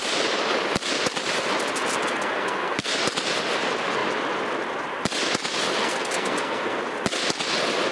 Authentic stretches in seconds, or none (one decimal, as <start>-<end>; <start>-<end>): 0.0-2.0; 2.9-5.8; 6.8-7.9